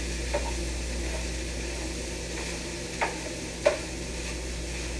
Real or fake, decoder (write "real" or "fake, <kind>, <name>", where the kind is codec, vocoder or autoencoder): real